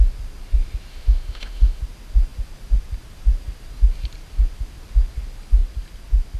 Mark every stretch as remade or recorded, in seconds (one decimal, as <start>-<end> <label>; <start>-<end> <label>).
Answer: 0.0-0.9 recorded; 0.9-1.8 remade; 1.8-6.4 recorded